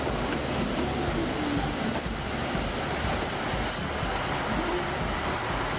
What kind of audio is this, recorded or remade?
recorded